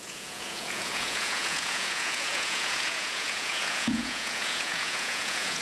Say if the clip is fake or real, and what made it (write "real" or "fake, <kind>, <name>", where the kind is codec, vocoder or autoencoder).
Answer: fake, vocoder, Vocos